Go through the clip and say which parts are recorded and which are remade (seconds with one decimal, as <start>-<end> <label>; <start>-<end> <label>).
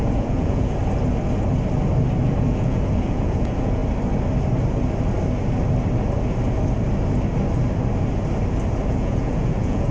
0.0-0.8 remade; 0.8-2.4 recorded; 2.4-3.8 remade; 3.8-8.9 recorded; 8.9-9.9 remade